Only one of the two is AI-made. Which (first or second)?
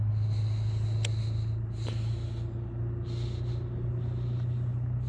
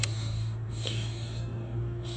second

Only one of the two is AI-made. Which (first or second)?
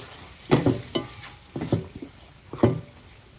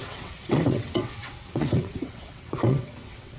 second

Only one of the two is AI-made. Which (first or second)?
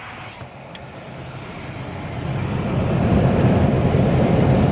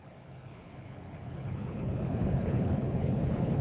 second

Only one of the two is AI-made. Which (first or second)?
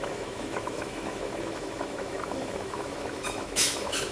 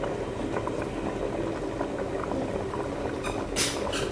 first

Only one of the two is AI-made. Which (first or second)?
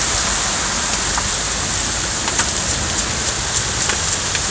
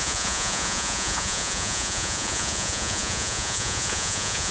second